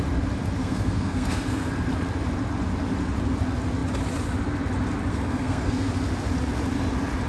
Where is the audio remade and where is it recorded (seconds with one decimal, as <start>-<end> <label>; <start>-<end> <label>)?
0.0-0.6 recorded; 0.6-1.7 remade; 1.7-5.1 recorded; 5.1-5.9 remade; 5.9-7.3 recorded